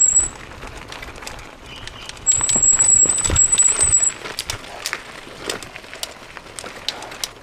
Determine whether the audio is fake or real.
real